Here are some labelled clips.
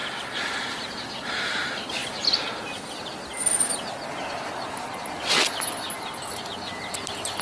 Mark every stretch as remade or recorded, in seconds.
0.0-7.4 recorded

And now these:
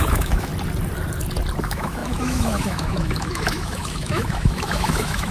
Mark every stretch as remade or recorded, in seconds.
0.0-0.5 remade; 0.5-1.6 recorded; 1.6-5.3 remade

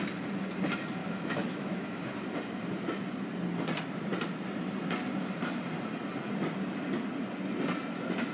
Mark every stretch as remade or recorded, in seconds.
0.0-1.0 recorded; 1.0-2.0 remade; 2.0-8.3 recorded

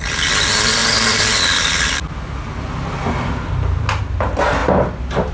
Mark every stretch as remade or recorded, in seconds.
0.0-5.3 recorded

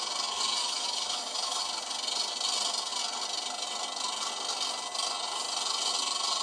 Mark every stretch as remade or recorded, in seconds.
0.0-0.6 recorded; 0.6-1.6 remade; 1.6-6.4 recorded

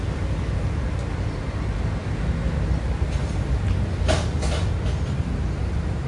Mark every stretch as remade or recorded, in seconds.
0.0-6.1 recorded